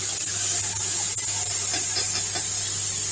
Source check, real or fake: real